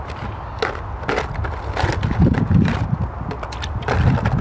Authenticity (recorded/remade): recorded